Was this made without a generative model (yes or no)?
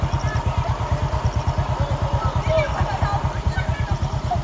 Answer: yes